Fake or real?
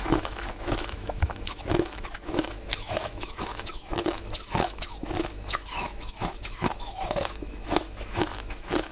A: fake